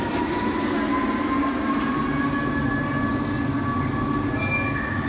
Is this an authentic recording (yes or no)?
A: yes